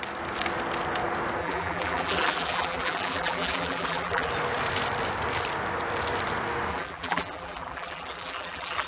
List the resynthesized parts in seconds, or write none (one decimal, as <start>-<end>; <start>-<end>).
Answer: 1.4-4.3; 6.7-8.9